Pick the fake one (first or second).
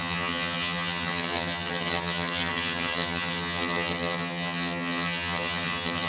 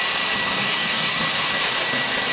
first